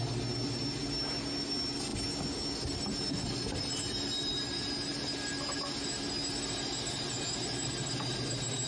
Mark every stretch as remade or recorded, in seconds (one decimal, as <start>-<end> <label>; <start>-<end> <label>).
0.0-8.7 recorded